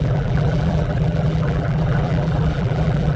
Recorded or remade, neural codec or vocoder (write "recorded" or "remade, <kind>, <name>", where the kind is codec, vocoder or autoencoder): remade, vocoder, BigVGAN v2